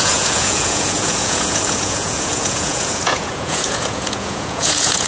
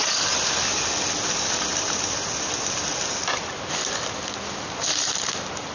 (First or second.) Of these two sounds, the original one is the second